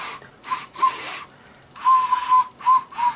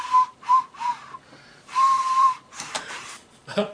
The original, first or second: first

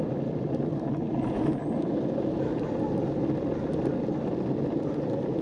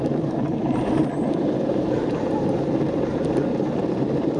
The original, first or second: first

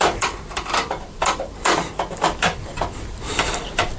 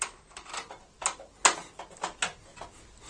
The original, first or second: second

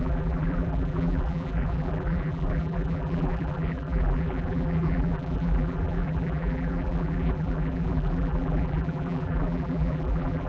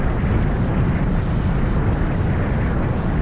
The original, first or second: second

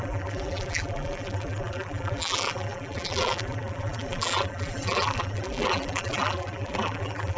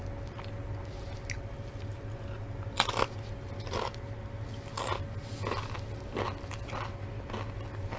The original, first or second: second